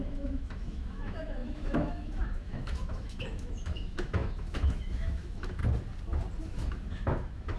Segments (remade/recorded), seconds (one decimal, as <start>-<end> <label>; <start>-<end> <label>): 0.0-5.6 remade; 5.6-6.4 recorded; 6.4-7.6 remade